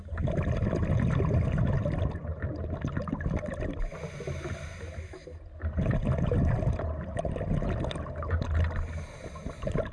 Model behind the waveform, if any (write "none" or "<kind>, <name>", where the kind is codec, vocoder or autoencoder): none